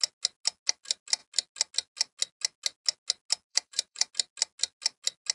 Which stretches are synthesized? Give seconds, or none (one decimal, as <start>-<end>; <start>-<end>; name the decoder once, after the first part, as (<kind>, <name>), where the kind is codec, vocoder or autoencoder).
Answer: 3.5-4.1 (vocoder, BigVGAN v2)